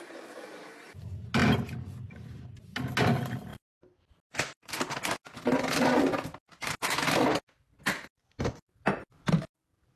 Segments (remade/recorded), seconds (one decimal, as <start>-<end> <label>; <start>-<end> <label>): 0.0-10.0 recorded

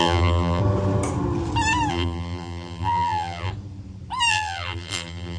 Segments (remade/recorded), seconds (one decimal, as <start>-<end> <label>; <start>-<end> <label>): 0.0-0.6 remade; 0.6-1.9 recorded; 1.9-3.5 remade; 3.5-4.3 recorded; 4.3-5.4 remade

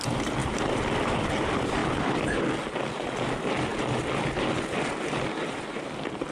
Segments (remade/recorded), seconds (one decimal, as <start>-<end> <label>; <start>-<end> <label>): 0.0-1.8 recorded; 1.8-2.4 remade; 2.4-6.3 recorded

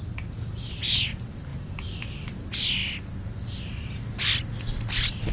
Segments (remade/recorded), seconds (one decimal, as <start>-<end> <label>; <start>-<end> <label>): 0.0-1.5 recorded; 1.5-2.3 remade; 2.3-5.3 recorded

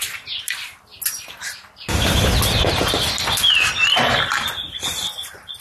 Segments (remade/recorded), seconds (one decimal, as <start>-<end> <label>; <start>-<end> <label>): 0.0-5.6 recorded

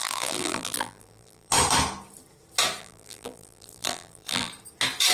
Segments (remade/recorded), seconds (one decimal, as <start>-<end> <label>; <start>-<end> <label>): 0.0-1.5 remade; 1.5-2.8 recorded; 2.8-4.5 remade; 4.5-5.1 recorded